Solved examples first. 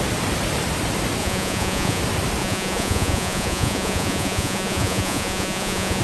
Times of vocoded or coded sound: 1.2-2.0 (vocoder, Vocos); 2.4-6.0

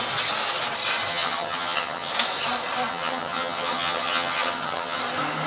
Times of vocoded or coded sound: 1.1-2.1 (vocoder, HiFi-GAN); 2.9-5.0

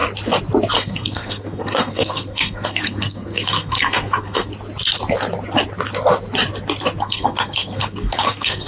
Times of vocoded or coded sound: 0.7-4.5 (codec, SNAC); 7.0-8.7

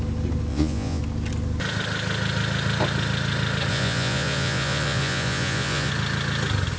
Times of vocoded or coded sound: 0.5-1.0 (vocoder, Vocos); 3.7-5.9

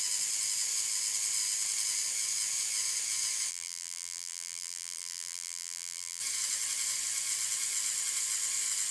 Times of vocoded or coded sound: 3.5-6.2 (vocoder, BigVGAN v2)

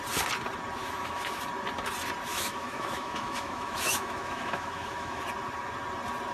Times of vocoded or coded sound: 0.8-1.4 (autoencoder, DAC-VAE); 2.3-5.2

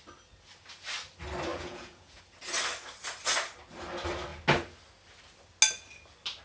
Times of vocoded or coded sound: 1.5-2.2 (vocoder, Vocos)